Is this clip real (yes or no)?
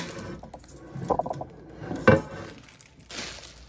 yes